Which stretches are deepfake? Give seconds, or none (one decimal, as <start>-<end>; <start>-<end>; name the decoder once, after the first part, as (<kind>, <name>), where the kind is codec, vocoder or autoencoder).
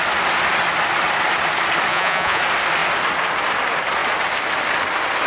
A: 1.9-2.4 (vocoder, Vocos)